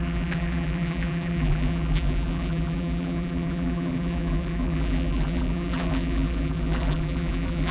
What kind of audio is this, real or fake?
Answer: fake